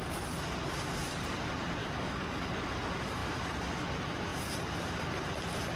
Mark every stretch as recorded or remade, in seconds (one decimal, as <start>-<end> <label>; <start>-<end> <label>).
0.0-1.8 recorded; 1.8-2.5 remade; 2.5-5.8 recorded